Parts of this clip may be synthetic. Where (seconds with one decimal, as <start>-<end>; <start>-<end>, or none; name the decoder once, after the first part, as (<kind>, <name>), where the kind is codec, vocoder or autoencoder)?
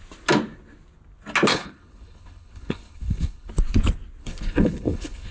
1.5-3.5 (codec, HILCodec); 4.2-5.3